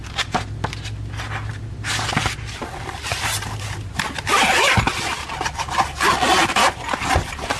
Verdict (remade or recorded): recorded